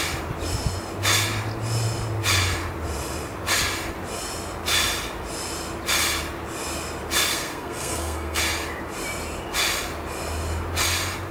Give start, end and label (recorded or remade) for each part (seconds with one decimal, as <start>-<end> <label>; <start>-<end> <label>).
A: 0.0-7.3 recorded; 7.3-8.4 remade; 8.4-11.3 recorded